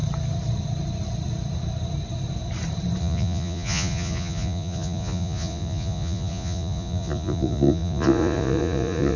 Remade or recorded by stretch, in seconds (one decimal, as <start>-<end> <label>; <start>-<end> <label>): 0.0-3.0 recorded; 3.0-9.2 remade